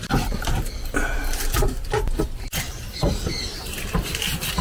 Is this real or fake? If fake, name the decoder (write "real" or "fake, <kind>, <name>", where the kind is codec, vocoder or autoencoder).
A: fake, vocoder, BigVGAN v2